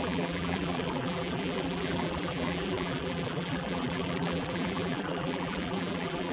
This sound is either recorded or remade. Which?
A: remade